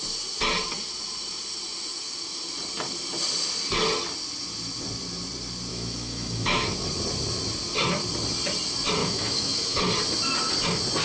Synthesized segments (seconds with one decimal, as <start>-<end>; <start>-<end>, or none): 5.7-6.7; 9.0-9.8

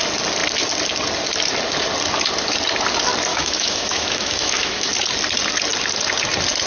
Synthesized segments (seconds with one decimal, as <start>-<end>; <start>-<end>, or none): 3.3-4.9